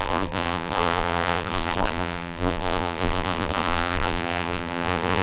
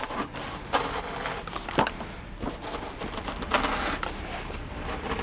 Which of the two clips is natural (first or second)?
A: second